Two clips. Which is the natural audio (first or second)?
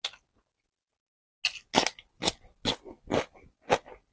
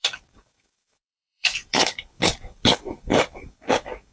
first